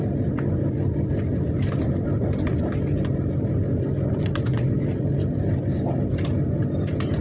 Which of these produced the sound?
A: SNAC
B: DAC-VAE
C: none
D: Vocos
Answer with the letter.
C